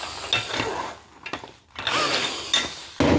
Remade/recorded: recorded